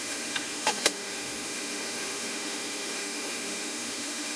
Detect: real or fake fake